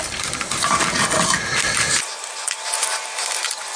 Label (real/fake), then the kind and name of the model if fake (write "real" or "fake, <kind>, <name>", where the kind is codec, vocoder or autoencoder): real